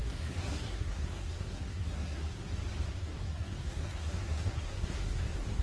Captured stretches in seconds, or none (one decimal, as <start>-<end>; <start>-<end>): 2.4-2.9